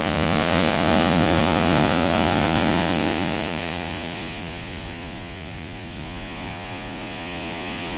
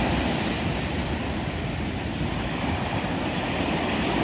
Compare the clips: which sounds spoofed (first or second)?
first